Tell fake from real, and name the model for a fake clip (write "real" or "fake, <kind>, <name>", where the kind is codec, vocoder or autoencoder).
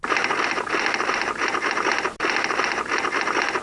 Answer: fake, vocoder, BigVGAN v2